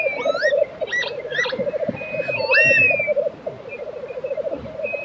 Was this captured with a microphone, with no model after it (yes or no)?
yes